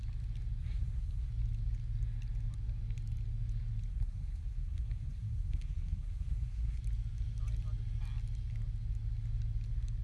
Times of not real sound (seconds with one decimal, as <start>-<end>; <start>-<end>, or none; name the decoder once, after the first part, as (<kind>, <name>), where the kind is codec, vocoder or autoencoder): 0.6-1.3 (codec, SNAC); 3.9-6.8